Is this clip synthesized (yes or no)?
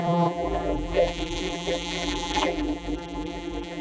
yes